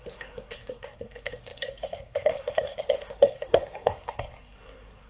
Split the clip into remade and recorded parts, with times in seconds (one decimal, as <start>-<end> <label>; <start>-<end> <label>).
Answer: 0.0-5.1 remade